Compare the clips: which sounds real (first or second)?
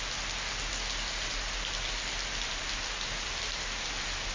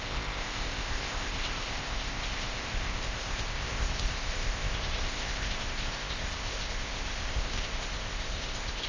first